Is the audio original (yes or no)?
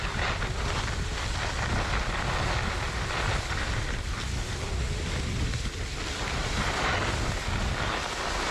yes